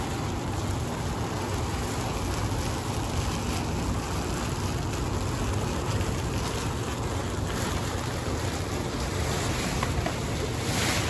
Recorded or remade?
recorded